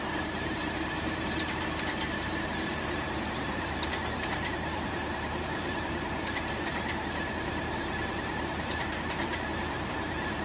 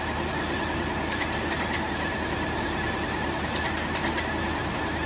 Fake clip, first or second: first